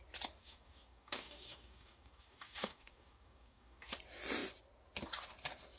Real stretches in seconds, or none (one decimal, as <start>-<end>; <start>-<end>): 0.0-0.4; 3.9-5.8